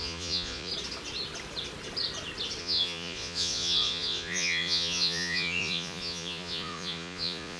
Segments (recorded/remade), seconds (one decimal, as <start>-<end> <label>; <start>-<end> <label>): 0.0-0.7 remade; 0.7-2.6 recorded; 2.6-7.6 remade